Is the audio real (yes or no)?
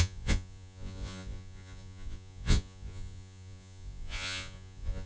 no